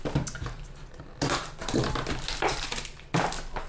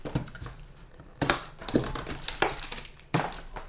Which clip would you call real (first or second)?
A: first